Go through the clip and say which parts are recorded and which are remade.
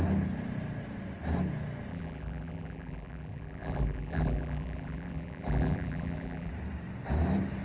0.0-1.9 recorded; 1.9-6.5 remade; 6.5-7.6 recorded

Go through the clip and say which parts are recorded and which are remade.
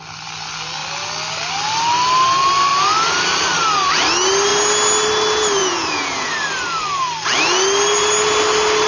0.0-5.6 recorded; 5.6-6.3 remade; 6.3-8.9 recorded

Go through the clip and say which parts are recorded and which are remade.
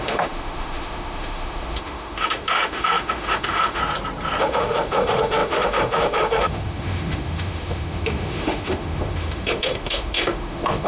0.0-3.8 remade; 3.8-4.4 recorded; 4.4-10.9 remade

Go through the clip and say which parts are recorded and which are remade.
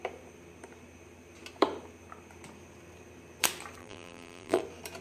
0.0-3.8 recorded; 3.8-4.6 remade; 4.6-5.0 recorded